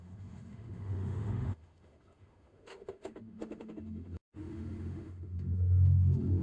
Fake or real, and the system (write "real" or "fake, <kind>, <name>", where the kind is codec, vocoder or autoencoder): fake, autoencoder, DAC-VAE